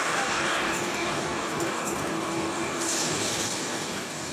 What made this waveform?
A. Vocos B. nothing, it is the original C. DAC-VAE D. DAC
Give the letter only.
D